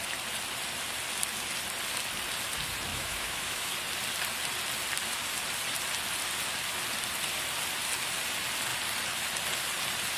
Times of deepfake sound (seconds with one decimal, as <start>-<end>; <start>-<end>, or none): 2.9-3.7